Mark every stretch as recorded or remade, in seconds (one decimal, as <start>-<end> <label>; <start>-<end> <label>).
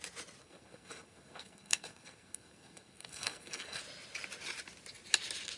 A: 0.0-0.4 recorded; 0.4-3.8 remade; 3.8-5.6 recorded